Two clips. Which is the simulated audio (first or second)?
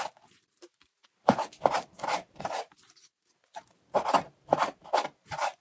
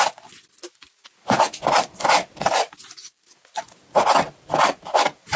first